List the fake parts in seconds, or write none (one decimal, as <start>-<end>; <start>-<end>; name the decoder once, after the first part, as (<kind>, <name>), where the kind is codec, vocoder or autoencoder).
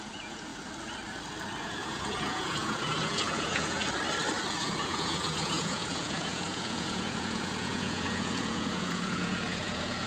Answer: 0.0-0.5 (vocoder, Vocos); 1.6-3.8; 4.6-10.1